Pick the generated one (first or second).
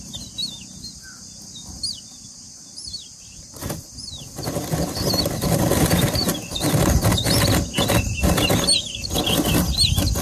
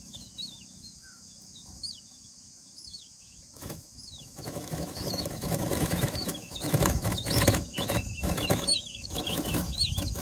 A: second